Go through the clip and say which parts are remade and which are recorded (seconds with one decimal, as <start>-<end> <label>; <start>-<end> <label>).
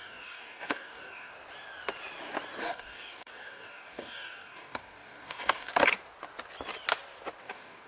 0.0-1.3 remade; 1.3-2.6 recorded; 2.6-5.7 remade; 5.7-7.4 recorded; 7.4-7.9 remade